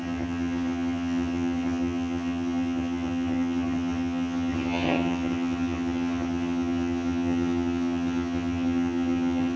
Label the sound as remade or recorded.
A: remade